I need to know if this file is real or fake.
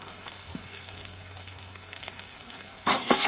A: fake